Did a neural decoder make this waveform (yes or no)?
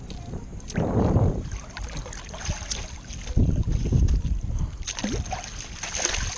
no